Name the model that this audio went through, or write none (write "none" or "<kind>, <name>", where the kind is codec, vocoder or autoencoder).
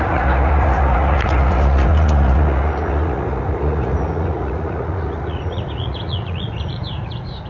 vocoder, Vocos